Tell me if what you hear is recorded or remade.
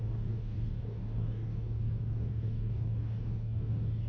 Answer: remade